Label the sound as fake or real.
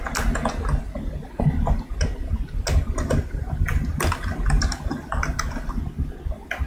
real